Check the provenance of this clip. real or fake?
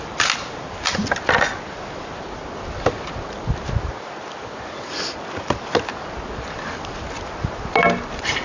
real